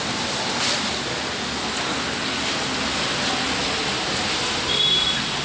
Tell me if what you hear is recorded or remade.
recorded